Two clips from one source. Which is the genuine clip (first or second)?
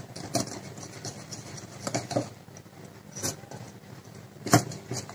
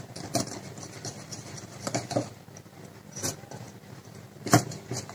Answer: first